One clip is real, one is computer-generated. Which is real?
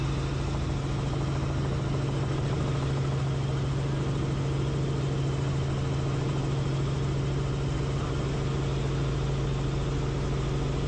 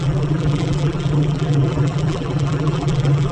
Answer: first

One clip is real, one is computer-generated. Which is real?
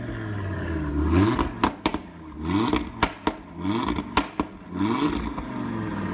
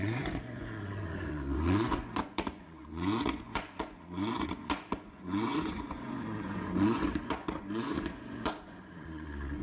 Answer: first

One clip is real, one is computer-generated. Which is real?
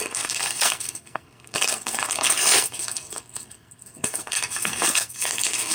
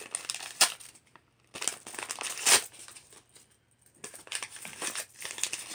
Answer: second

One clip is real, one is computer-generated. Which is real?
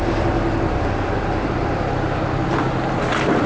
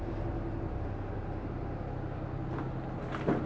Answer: second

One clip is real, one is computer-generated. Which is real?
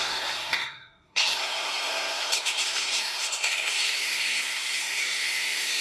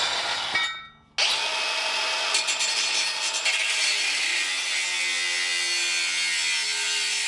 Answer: second